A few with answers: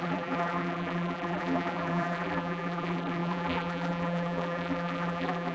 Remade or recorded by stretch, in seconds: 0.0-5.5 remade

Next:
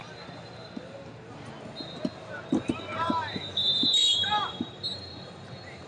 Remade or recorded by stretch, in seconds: 0.0-2.5 recorded; 2.5-5.9 remade

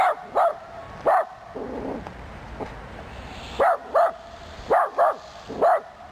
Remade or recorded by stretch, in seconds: 0.0-0.5 recorded; 0.5-1.3 remade; 1.3-1.9 recorded; 1.9-3.4 remade; 3.4-3.8 recorded; 3.8-4.8 remade; 4.8-6.1 recorded

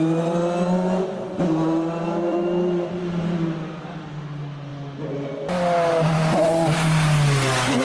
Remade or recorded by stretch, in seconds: 0.0-2.3 recorded; 2.3-4.1 remade; 4.1-7.8 recorded

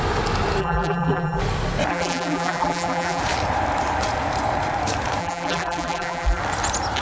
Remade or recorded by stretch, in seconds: 0.0-0.6 recorded; 0.6-1.4 remade; 1.4-1.9 recorded; 1.9-3.2 remade; 3.2-5.2 recorded; 5.2-6.4 remade; 6.4-7.0 recorded

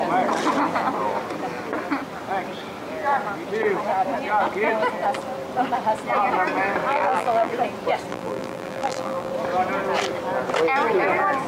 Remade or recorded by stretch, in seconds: 0.0-6.9 recorded; 6.9-7.5 remade; 7.5-8.1 recorded; 8.1-9.3 remade; 9.3-11.5 recorded

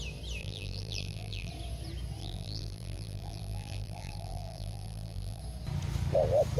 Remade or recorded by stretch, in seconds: 0.0-0.4 recorded; 0.4-1.5 remade; 1.5-2.2 recorded; 2.2-5.4 remade; 5.4-6.6 recorded